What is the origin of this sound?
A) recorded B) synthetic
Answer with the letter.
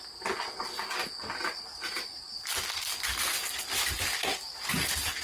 A